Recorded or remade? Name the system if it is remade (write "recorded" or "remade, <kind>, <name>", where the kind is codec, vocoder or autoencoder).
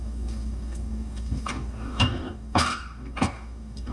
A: remade, codec, DAC